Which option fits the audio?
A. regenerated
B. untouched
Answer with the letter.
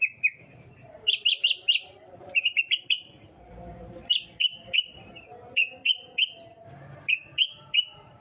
A